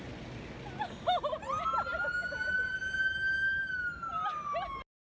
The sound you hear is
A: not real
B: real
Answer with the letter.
B